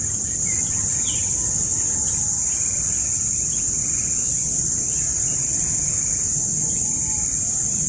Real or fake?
real